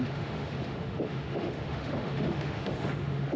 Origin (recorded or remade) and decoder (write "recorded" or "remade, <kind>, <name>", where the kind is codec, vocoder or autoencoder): remade, autoencoder, DAC-VAE